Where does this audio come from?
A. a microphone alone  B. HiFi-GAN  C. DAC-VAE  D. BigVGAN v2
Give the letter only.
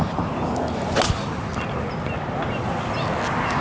A